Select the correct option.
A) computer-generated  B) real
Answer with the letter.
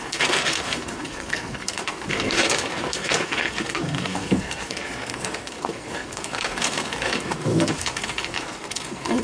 A